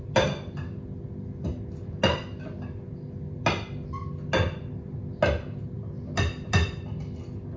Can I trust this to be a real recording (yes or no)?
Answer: yes